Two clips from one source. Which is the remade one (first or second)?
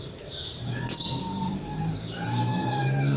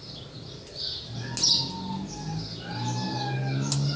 first